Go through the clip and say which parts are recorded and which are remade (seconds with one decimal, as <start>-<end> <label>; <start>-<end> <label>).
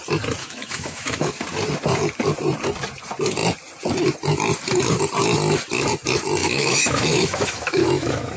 0.0-0.4 recorded; 0.4-1.3 remade; 1.3-6.4 recorded; 6.4-8.4 remade